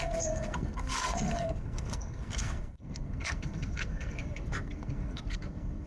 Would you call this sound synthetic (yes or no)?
yes